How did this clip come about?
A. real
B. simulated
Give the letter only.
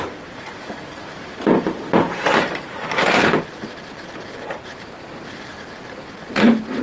B